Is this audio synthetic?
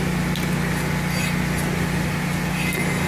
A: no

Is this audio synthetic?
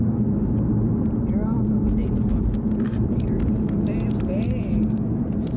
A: no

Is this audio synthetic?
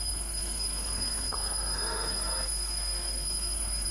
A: yes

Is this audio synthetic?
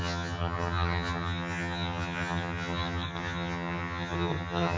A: yes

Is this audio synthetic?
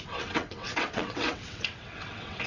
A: yes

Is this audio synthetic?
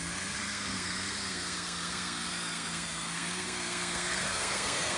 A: yes